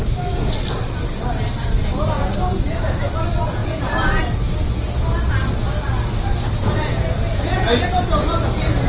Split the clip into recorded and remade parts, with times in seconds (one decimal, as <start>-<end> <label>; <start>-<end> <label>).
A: 0.0-3.6 recorded; 3.6-4.2 remade; 4.2-7.3 recorded; 7.3-8.0 remade; 8.0-8.9 recorded